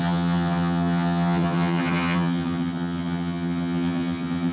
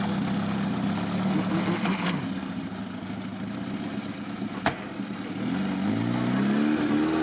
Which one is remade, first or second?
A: first